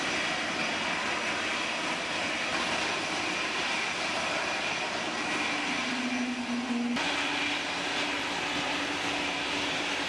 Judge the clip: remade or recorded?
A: recorded